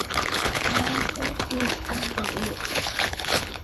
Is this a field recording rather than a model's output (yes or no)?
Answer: no